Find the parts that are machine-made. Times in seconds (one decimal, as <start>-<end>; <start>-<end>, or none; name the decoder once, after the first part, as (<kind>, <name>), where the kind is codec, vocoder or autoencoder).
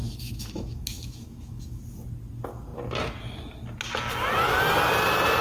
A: 0.0-1.8 (autoencoder, DAC-VAE)